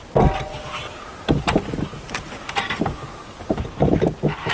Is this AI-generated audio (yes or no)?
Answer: no